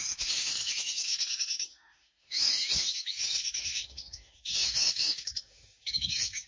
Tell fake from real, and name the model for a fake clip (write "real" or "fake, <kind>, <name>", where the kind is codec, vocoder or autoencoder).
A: fake, autoencoder, DAC-VAE